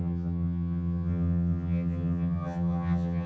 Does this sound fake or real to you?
fake